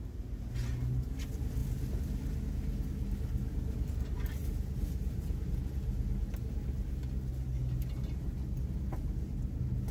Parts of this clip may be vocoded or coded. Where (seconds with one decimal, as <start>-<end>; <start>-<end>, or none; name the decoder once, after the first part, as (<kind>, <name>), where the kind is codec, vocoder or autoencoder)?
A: none